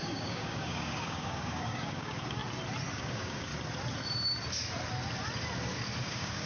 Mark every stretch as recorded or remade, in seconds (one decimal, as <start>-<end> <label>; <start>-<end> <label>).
0.0-2.4 remade; 2.4-2.9 recorded; 2.9-3.5 remade; 3.5-6.0 recorded; 6.0-6.5 remade

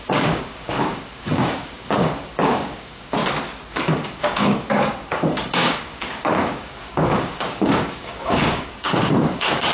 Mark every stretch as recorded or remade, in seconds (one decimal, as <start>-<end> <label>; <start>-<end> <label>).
0.0-3.2 remade; 3.2-3.7 recorded; 3.7-9.7 remade

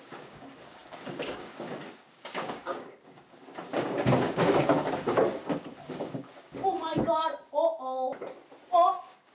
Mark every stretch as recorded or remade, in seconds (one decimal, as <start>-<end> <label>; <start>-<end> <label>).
0.0-6.9 remade; 6.9-8.9 recorded; 8.9-9.3 remade

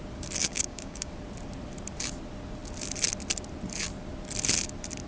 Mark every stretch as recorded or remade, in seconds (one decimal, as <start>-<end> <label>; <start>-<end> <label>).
0.0-0.4 recorded; 0.4-1.1 remade; 1.1-5.1 recorded

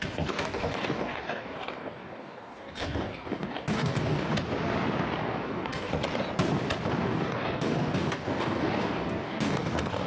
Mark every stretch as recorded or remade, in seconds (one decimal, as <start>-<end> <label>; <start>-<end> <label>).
0.0-4.3 remade; 4.3-5.2 recorded; 5.2-5.9 remade; 5.9-7.0 recorded; 7.0-10.1 remade